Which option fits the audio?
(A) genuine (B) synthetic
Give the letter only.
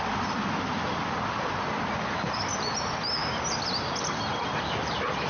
A